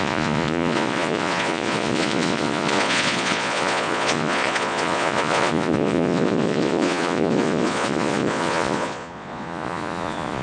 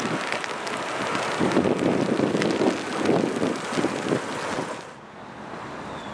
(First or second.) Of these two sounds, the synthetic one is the first